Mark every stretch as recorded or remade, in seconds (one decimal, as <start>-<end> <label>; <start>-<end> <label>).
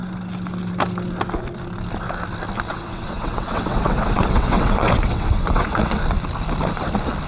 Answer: 0.0-2.7 recorded; 2.7-6.0 remade; 6.0-7.3 recorded